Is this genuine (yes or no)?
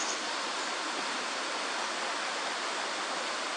yes